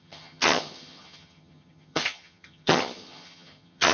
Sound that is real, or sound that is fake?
fake